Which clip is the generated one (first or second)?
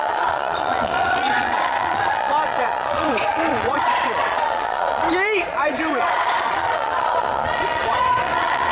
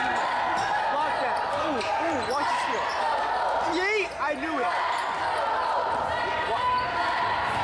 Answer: first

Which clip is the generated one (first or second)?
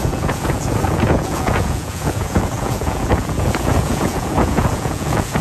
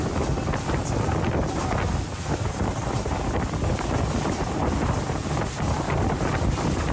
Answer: first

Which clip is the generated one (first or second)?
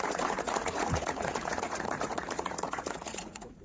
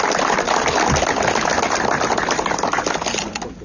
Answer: first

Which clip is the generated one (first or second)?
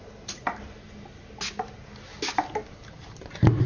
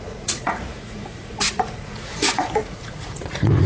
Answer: second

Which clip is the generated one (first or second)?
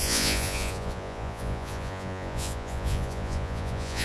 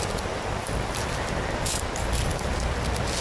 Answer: first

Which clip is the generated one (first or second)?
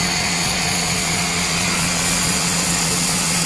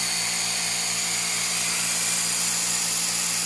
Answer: first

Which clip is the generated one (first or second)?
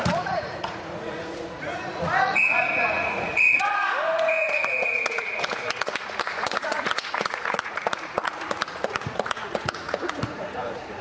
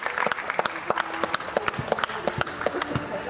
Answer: first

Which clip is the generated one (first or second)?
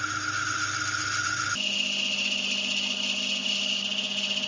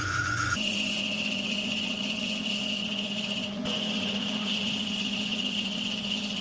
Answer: second